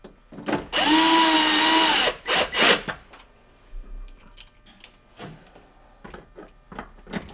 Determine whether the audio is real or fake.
real